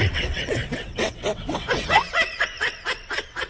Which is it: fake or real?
fake